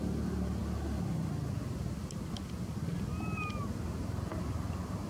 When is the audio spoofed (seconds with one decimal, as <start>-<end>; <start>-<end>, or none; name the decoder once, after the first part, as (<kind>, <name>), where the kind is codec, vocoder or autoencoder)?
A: none